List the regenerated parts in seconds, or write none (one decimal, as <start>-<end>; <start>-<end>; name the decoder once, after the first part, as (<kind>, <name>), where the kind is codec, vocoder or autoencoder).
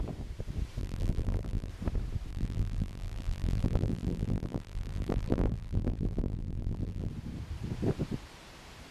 0.8-1.7 (vocoder, BigVGAN v2); 2.3-7.1